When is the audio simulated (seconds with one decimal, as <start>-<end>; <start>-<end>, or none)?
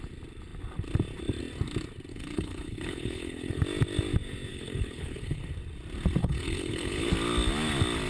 2.1-3.6; 4.5-5.5; 6.2-7.1